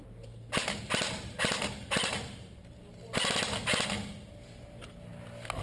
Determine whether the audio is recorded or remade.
recorded